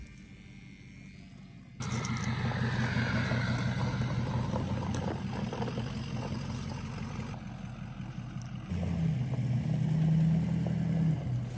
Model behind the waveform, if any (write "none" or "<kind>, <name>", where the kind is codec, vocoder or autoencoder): none